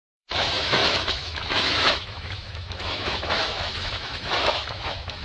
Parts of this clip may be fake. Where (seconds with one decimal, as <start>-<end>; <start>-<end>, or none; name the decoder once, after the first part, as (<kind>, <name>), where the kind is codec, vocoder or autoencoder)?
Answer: 0.0-5.2 (autoencoder, DAC-VAE)